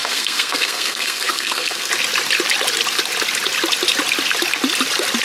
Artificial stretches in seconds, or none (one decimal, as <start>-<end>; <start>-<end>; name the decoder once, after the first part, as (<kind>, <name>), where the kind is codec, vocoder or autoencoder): 0.0-1.9 (codec, SNAC)